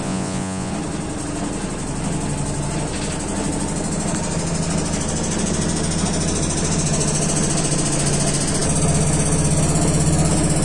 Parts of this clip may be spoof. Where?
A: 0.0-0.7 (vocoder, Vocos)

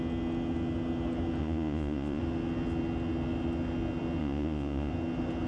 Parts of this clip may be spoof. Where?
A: 1.4-2.2 (vocoder, Vocos); 4.2-4.9

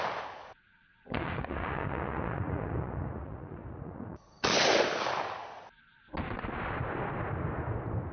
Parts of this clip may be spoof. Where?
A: 0.4-4.4 (vocoder, Vocos)

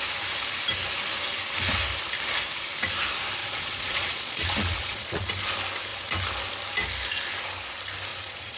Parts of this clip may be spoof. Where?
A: 3.4-5.3 (vocoder, Vocos); 8.1-8.6

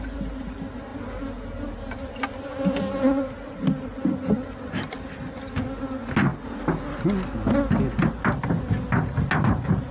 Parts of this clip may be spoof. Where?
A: none

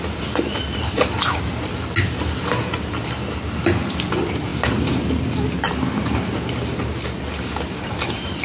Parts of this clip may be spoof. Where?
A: none

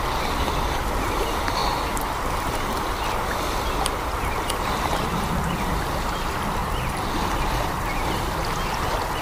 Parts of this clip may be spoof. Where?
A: none